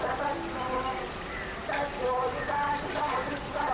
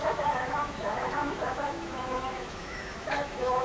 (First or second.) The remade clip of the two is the second